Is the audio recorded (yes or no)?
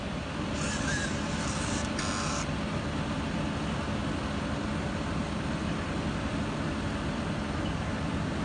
yes